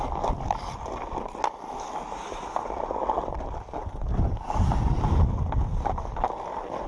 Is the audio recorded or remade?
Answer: recorded